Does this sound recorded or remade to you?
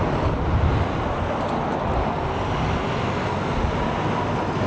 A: recorded